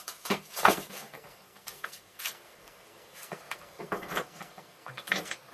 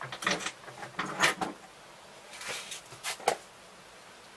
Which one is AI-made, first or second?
first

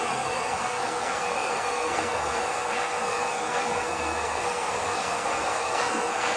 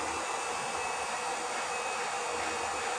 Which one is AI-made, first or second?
first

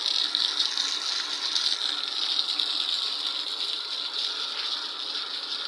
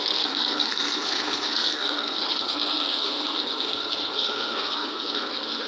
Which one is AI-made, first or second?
second